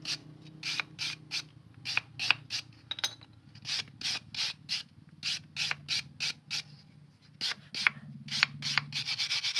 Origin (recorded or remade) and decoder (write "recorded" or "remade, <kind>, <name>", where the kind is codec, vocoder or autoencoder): recorded